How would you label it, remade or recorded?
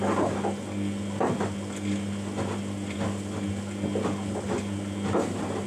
remade